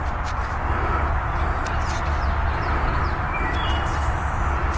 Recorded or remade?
recorded